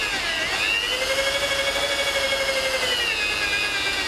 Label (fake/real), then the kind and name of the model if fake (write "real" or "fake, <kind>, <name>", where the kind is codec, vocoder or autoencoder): real